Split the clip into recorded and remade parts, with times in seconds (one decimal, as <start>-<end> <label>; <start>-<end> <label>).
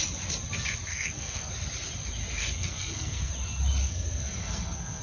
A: 0.0-0.9 recorded; 0.9-1.5 remade; 1.5-2.4 recorded; 2.4-3.3 remade; 3.3-3.8 recorded; 3.8-5.0 remade